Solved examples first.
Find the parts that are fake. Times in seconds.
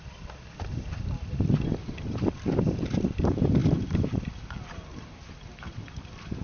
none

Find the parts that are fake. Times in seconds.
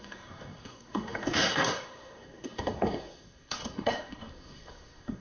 0.0-5.2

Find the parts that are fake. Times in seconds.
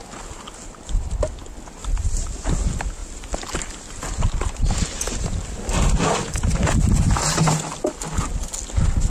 none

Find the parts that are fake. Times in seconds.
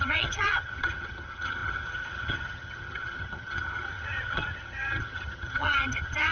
0.0-6.3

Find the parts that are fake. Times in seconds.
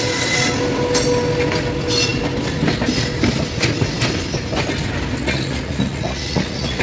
5.2-6.8